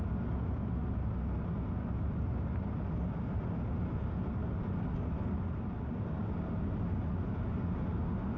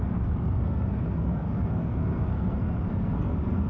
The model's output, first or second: second